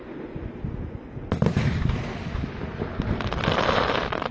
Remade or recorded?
recorded